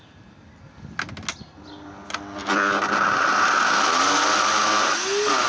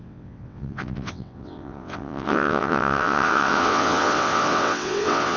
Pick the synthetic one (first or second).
second